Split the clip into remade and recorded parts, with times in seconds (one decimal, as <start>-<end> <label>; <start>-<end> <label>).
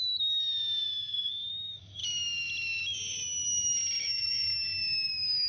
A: 0.0-0.4 remade; 0.4-1.5 recorded; 1.5-2.0 remade; 2.0-4.0 recorded; 4.0-5.5 remade